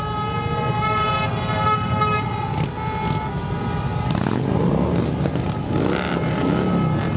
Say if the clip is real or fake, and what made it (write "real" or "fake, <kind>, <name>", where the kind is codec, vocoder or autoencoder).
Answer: real